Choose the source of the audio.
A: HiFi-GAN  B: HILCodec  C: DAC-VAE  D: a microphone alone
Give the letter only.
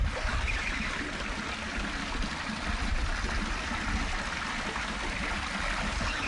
D